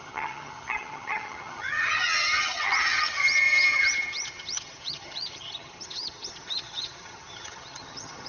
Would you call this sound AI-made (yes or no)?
yes